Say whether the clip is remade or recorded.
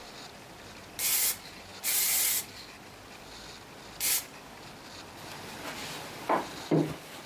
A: recorded